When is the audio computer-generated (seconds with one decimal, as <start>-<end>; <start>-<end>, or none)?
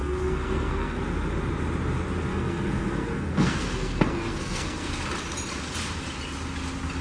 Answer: 0.0-1.0; 2.3-4.9